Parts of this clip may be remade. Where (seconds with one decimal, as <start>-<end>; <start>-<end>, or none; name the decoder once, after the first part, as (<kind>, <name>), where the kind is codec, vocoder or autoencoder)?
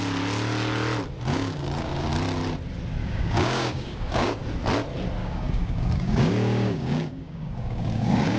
1.3-2.1 (codec, DAC); 3.0-4.4; 5.2-8.4